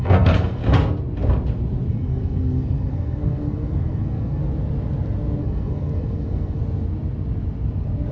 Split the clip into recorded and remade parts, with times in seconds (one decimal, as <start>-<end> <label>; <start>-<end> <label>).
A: 0.0-0.6 remade; 0.6-1.9 recorded; 1.9-4.4 remade; 4.4-5.4 recorded; 5.4-6.6 remade; 6.6-8.1 recorded